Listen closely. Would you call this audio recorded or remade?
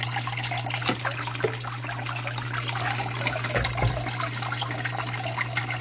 recorded